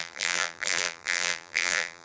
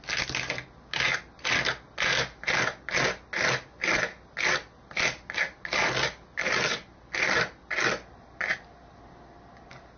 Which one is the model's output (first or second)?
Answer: first